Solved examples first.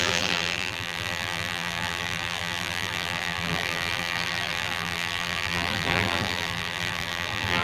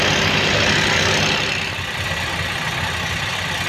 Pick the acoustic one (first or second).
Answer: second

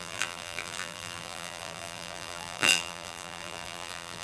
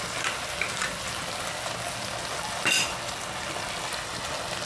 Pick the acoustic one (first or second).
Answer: second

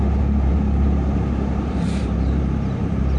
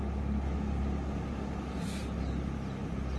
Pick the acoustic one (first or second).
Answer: second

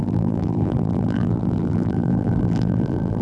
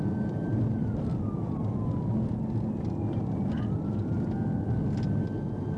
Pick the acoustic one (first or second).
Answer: second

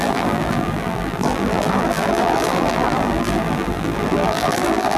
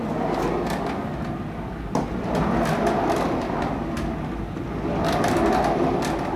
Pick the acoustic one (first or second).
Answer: second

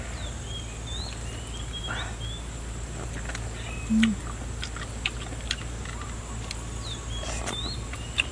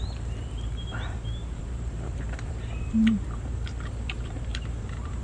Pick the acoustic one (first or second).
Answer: first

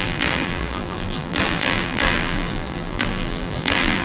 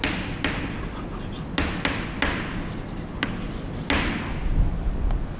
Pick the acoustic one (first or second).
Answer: second